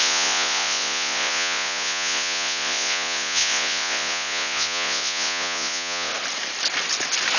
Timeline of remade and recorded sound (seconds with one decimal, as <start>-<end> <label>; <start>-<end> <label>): 0.0-6.1 remade; 6.1-7.4 recorded